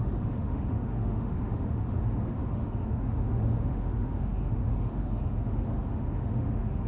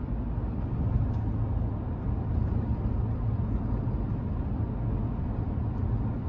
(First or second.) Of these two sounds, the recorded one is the second